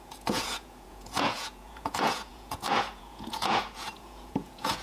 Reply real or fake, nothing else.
fake